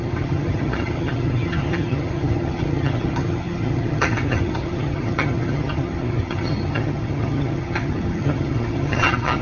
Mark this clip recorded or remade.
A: remade